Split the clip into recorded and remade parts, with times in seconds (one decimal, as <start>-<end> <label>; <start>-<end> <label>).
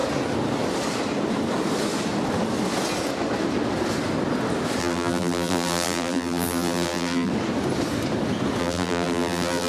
0.0-4.8 recorded; 4.8-7.3 remade; 7.3-8.6 recorded; 8.6-9.7 remade